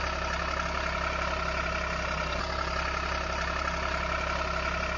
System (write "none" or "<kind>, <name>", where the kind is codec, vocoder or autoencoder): none